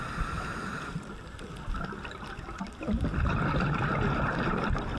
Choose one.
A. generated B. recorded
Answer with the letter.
A